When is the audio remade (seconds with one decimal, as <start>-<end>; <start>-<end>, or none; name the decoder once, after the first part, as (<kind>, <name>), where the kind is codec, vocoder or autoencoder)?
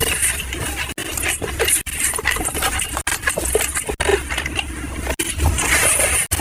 none